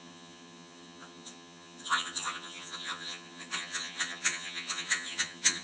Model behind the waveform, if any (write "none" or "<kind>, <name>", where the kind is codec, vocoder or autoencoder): vocoder, HiFi-GAN